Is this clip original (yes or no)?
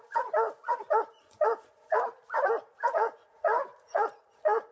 no